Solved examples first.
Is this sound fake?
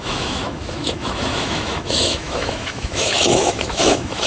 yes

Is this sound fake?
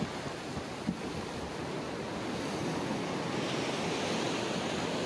no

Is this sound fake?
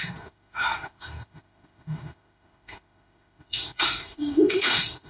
yes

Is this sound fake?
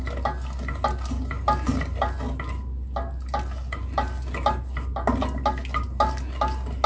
no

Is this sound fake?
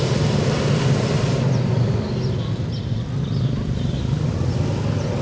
no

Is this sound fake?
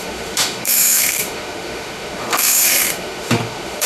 yes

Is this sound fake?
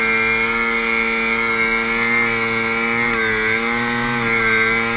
no